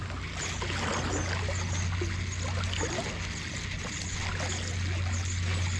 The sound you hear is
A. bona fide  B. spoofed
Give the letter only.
A